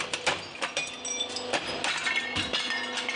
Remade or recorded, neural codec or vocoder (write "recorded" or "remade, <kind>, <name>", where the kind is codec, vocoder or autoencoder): recorded